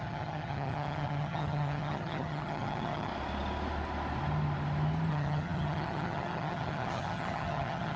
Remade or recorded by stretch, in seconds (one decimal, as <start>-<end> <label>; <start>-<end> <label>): 0.0-3.1 remade; 3.1-5.1 recorded; 5.1-8.0 remade